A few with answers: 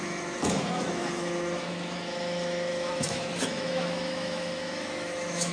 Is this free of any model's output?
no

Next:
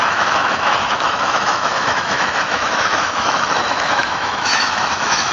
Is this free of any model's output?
no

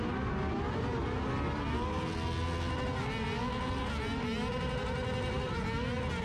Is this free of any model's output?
yes